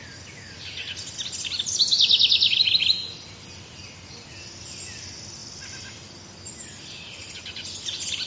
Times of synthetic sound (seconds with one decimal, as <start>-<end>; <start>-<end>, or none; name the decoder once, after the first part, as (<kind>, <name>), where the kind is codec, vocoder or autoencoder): none